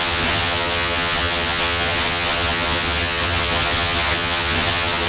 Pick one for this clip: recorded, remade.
remade